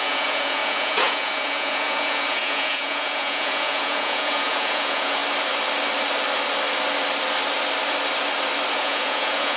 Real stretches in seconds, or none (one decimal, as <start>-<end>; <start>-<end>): 5.2-8.7